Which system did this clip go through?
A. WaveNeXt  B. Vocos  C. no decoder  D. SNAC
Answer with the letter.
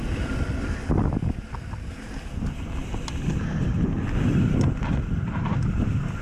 C